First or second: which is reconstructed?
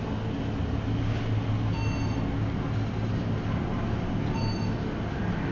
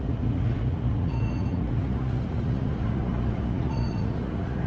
second